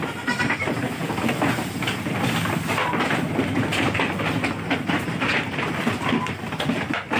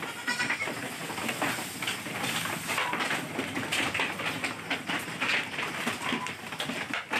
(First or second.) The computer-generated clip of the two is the first